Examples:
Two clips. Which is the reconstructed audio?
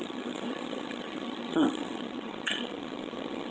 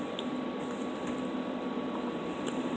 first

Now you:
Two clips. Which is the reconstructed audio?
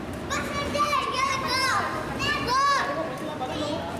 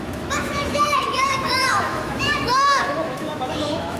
second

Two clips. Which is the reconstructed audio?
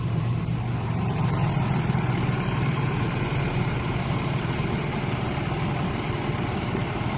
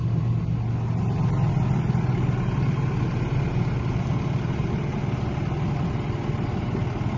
first